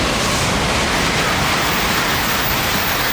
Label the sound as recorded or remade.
recorded